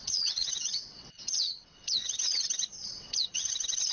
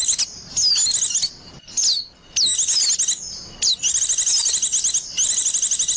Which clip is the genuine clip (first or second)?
second